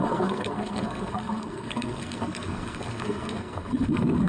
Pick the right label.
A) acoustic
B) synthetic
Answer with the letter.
B